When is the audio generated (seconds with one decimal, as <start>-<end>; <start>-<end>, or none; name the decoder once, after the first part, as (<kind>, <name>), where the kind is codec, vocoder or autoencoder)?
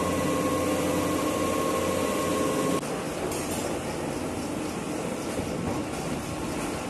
4.8-6.2 (vocoder, BigVGAN v2)